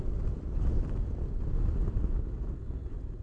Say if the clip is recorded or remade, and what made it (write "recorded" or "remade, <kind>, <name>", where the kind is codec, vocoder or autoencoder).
recorded